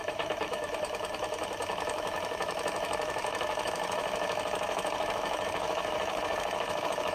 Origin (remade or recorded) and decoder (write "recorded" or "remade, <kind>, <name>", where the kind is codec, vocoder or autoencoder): remade, autoencoder, DAC-VAE